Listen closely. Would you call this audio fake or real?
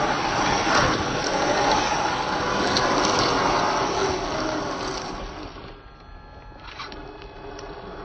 real